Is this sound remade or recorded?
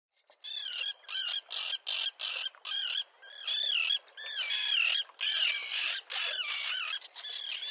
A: recorded